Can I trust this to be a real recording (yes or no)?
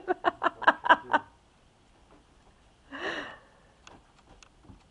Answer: yes